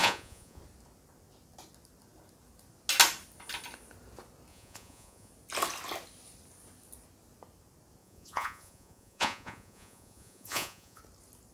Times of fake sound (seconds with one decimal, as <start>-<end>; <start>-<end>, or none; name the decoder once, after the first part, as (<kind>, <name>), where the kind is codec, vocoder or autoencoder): 0.0-0.6 (vocoder, Vocos); 4.5-5.3; 8.0-11.0